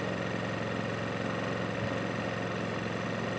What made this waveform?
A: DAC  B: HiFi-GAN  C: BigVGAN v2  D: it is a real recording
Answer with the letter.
D